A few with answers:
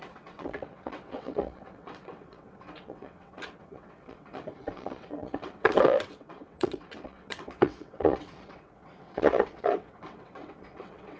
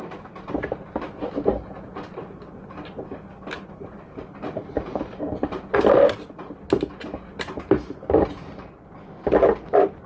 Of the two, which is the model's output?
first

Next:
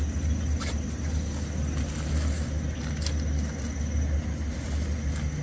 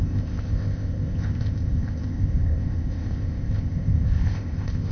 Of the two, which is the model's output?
second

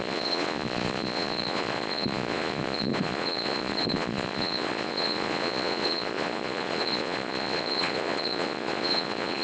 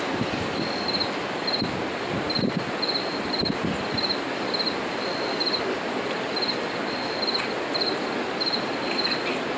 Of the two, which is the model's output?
first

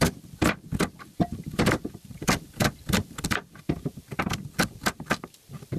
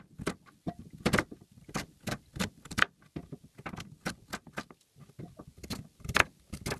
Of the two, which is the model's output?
first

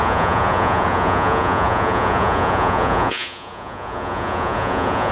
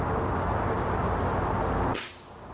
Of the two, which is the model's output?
first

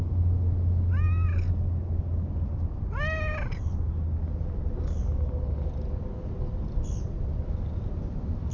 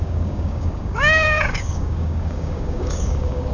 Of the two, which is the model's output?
second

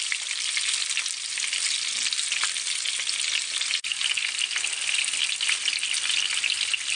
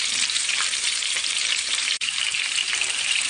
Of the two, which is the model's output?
second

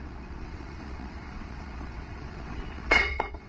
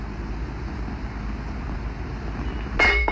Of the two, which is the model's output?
first